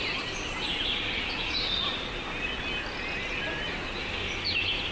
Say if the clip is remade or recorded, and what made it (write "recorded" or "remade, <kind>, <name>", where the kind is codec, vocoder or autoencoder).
recorded